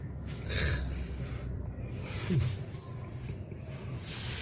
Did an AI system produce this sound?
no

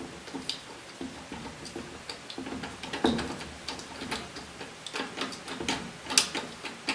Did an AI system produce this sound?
no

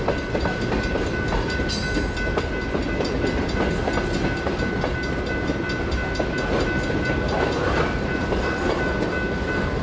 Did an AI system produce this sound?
no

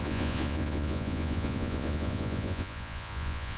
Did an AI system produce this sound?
yes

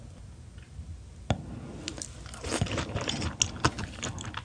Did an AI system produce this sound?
no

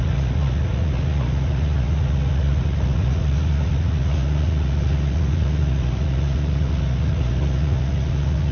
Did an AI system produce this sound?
yes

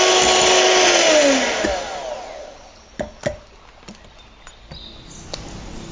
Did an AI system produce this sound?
no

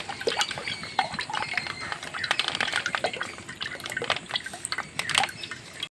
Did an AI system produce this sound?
no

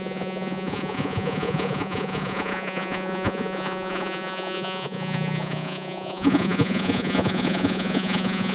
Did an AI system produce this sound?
yes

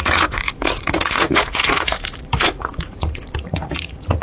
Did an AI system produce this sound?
yes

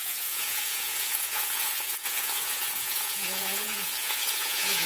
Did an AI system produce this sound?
yes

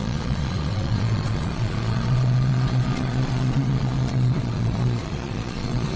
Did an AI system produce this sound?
yes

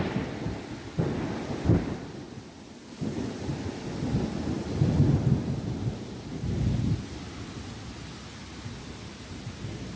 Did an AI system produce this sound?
no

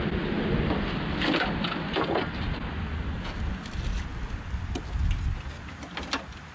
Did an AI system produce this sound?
no